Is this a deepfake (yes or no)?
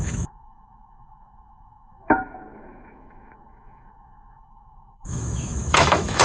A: yes